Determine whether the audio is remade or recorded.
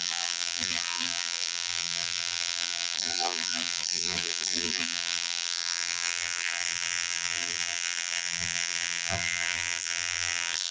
remade